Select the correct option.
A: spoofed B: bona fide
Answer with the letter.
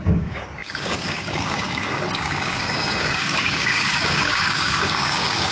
A